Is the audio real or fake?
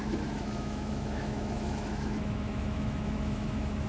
fake